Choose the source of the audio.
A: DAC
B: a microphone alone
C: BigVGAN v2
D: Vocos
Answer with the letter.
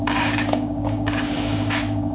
A